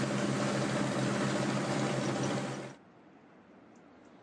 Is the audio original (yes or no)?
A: yes